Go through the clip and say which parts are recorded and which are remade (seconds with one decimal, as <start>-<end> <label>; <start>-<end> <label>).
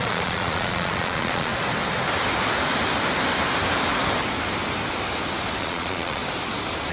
0.0-1.5 remade; 1.5-5.6 recorded; 5.6-6.2 remade; 6.2-6.9 recorded